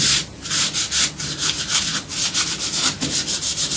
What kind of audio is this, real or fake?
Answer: real